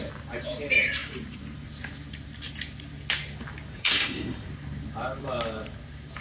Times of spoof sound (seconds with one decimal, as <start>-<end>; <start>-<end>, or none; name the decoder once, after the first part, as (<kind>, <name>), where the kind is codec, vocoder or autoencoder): 3.7-4.5 (codec, SNAC)